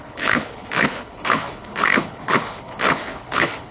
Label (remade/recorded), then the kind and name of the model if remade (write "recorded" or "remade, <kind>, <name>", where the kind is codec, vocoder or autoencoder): remade, codec, HILCodec